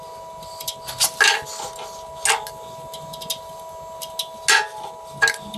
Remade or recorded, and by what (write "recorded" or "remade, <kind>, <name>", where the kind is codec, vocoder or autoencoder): recorded